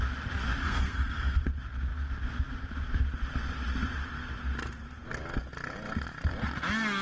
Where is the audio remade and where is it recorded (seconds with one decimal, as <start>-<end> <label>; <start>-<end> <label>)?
0.0-0.6 recorded; 0.6-1.4 remade; 1.4-7.0 recorded